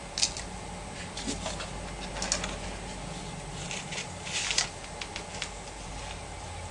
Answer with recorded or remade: recorded